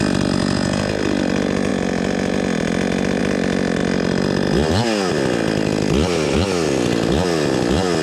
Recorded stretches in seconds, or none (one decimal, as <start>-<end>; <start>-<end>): 0.0-0.4; 1.0-8.0